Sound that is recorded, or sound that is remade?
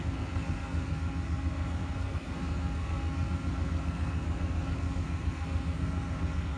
remade